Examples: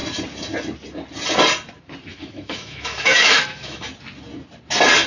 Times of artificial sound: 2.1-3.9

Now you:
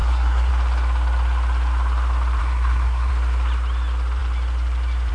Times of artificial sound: 0.0-0.5; 2.4-3.1